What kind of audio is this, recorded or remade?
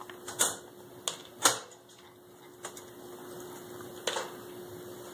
recorded